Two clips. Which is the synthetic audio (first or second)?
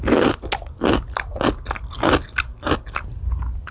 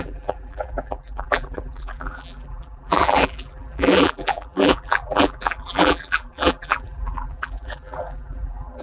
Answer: second